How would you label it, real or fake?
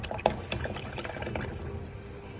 real